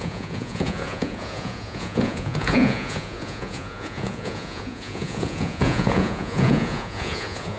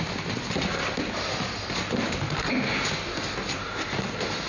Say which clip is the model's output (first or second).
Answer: first